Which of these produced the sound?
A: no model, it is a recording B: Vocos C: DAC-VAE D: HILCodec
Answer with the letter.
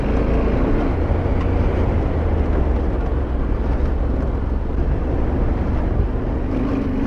A